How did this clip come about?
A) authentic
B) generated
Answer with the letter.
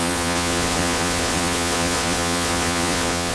B